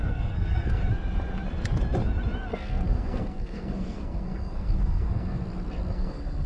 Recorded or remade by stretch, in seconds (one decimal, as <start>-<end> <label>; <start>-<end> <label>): 0.0-0.8 remade; 0.8-2.5 recorded; 2.5-5.4 remade; 5.4-5.9 recorded; 5.9-6.5 remade

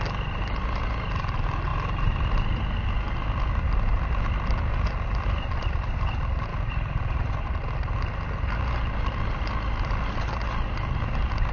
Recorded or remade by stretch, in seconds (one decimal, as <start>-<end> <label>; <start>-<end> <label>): 0.0-11.5 recorded